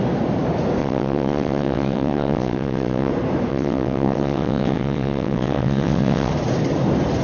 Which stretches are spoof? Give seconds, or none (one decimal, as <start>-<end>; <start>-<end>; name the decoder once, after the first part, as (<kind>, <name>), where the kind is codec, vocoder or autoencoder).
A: 0.8-3.1 (vocoder, WaveNeXt); 3.5-6.3